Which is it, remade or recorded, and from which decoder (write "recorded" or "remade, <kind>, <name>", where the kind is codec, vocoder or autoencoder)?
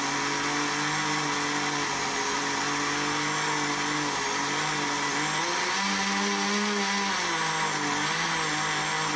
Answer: recorded